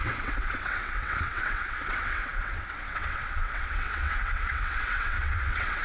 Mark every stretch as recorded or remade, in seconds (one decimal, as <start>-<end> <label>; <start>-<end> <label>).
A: 0.0-5.8 remade